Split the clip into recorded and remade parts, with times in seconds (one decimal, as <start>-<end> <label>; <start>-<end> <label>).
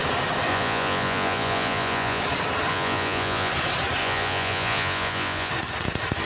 0.0-0.5 recorded; 0.5-2.2 remade; 2.2-2.7 recorded; 2.7-3.5 remade; 3.5-4.0 recorded; 4.0-5.5 remade; 5.5-6.2 recorded